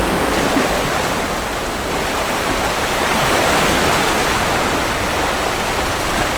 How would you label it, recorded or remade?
recorded